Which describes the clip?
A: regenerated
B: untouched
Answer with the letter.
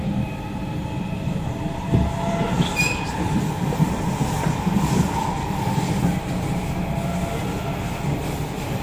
B